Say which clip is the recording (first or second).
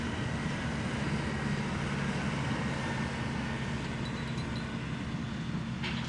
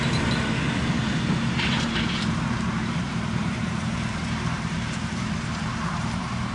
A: first